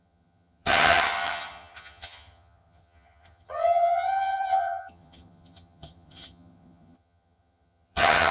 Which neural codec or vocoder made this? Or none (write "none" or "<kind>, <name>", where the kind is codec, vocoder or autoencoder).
vocoder, HiFi-GAN